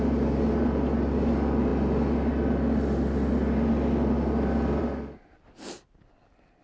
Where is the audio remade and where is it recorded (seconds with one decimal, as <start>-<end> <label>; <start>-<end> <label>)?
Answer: 0.0-6.6 recorded